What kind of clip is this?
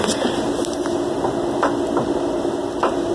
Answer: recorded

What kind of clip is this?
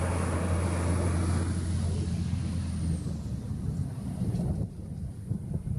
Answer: recorded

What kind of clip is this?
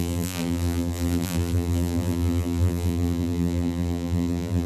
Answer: remade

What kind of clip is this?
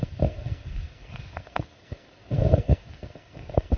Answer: remade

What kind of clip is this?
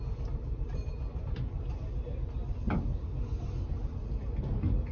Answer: recorded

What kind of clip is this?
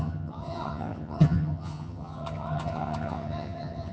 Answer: remade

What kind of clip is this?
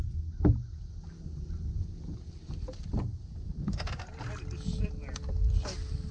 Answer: recorded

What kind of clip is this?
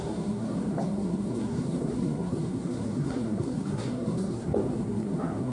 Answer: remade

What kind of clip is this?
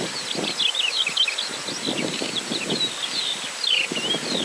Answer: recorded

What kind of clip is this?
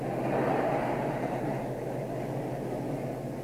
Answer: recorded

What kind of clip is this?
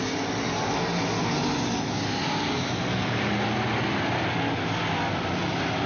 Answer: recorded